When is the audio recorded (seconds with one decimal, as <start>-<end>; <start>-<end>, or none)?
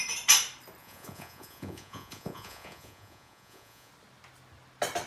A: 0.0-0.8; 3.9-5.1